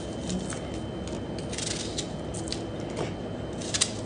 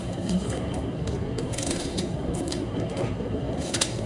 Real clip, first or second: first